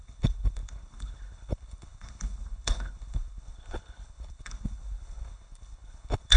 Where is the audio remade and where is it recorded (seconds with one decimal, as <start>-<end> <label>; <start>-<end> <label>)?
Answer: 0.0-6.4 remade